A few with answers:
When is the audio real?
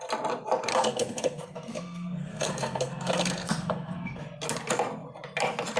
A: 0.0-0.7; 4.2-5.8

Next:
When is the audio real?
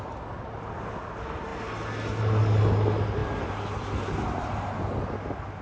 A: 0.0-5.6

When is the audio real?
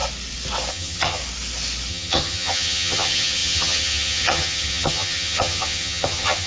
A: 0.0-0.7; 1.2-1.9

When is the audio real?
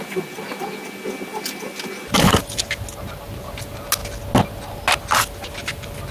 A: 0.0-6.1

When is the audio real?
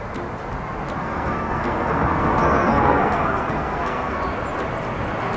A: 0.0-1.0; 4.2-5.4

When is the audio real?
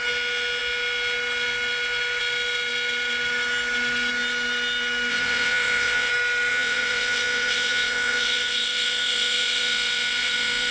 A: 0.0-5.1; 6.1-6.5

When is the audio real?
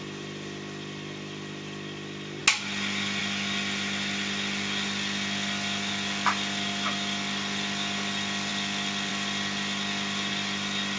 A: 0.0-11.0